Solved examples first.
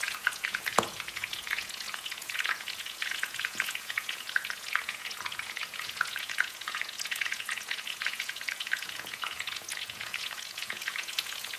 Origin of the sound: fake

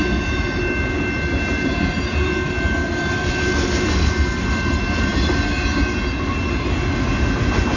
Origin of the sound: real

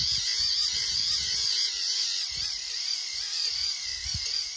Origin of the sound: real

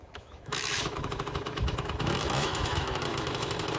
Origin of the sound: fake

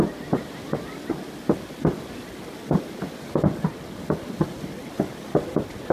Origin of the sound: real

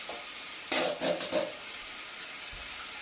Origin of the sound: real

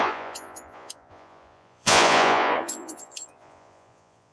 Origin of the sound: fake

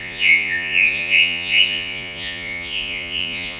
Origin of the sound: fake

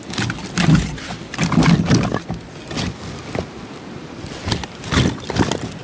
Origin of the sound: real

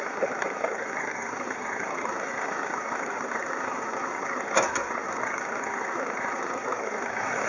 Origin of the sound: fake